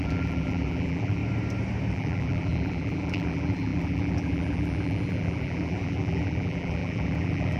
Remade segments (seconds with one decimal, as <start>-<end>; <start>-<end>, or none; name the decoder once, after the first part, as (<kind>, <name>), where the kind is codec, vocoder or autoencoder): 0.0-1.2 (vocoder, BigVGAN v2); 1.9-7.6